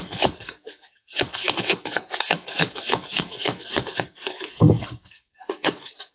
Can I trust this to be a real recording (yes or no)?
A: no